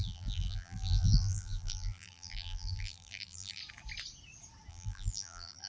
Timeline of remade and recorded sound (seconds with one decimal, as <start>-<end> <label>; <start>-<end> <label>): 0.0-3.6 remade; 3.6-4.7 recorded; 4.7-5.7 remade